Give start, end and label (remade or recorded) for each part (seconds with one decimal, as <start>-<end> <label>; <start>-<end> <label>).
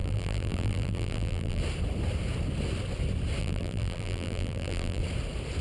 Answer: 0.0-1.6 remade; 1.6-3.4 recorded; 3.4-5.0 remade; 5.0-5.6 recorded